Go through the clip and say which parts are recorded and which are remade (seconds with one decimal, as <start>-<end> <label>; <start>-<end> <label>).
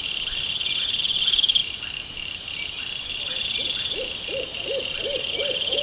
0.0-1.6 remade; 1.6-3.2 recorded; 3.2-5.8 remade